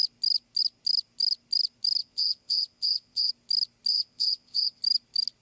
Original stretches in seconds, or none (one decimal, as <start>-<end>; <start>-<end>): 0.0-2.0; 3.3-3.9; 4.8-5.4